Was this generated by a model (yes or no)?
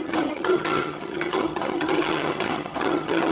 yes